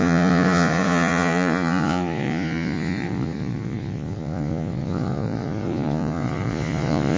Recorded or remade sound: remade